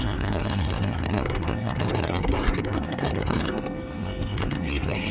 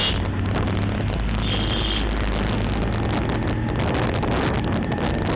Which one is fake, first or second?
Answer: first